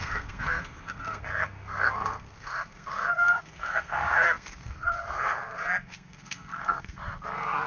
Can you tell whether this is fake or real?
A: fake